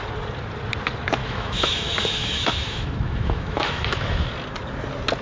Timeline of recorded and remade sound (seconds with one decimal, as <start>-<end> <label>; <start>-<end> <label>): 0.0-1.2 recorded; 1.2-4.3 remade; 4.3-5.2 recorded